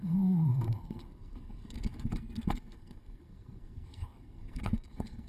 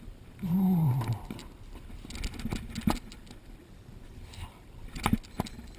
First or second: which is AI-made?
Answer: first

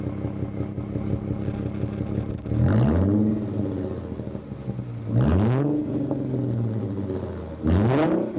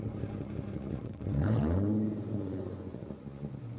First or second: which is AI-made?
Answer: second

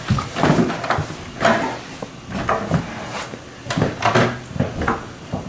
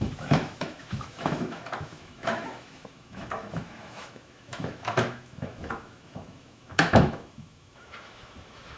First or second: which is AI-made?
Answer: second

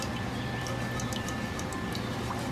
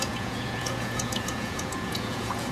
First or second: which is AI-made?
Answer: second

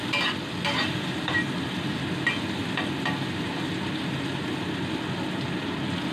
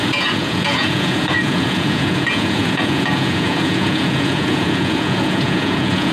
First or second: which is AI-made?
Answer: second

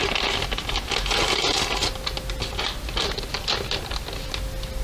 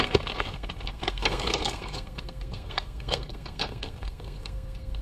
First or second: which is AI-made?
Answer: second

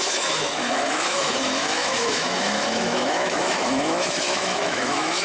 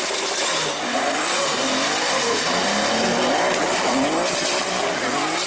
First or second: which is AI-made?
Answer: first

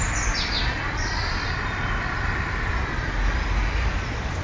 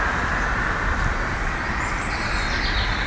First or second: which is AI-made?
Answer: first